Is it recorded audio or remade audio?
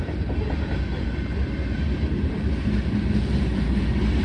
recorded